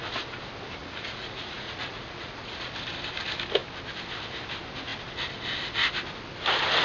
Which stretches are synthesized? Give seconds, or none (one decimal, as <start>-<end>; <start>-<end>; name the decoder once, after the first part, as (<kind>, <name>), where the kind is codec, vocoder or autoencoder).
0.8-2.7 (vocoder, Vocos)